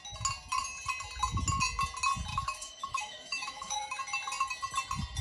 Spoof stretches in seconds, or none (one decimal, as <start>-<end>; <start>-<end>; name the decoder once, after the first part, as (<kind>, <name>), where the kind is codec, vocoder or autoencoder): 2.3-4.0 (autoencoder, DAC-VAE)